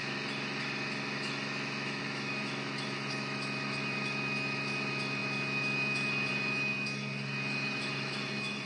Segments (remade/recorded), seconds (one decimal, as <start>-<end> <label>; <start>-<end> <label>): 0.0-8.7 remade